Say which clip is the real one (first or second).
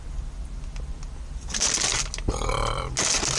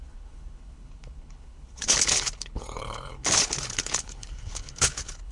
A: first